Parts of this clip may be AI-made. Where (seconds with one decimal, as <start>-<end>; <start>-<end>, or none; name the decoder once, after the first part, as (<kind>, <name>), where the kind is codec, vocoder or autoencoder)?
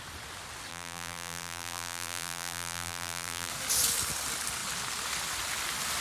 0.7-3.5 (vocoder, BigVGAN v2)